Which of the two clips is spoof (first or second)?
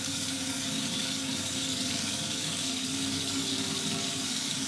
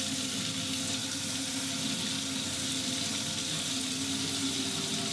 first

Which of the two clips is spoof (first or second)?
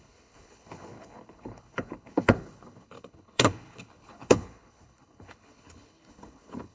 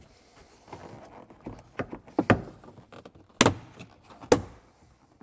first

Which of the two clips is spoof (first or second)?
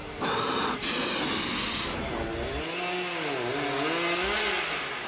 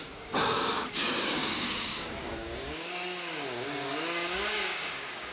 second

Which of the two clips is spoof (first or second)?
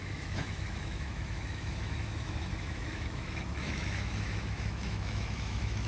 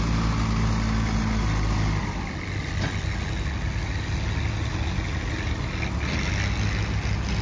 first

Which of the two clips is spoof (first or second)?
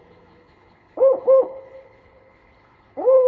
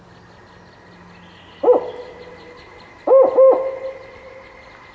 first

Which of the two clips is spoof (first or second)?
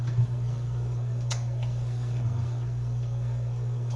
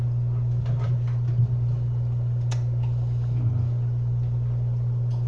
first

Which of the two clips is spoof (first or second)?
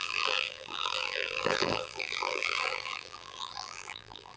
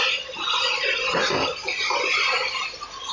first